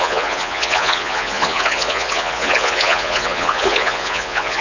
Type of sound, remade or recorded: remade